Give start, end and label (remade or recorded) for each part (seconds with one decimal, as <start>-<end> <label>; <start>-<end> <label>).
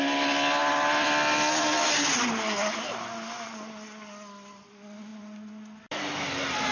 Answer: 0.0-6.7 recorded